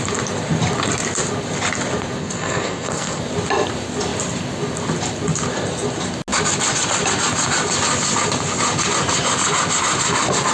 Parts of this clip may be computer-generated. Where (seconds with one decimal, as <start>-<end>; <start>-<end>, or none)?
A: 2.2-3.2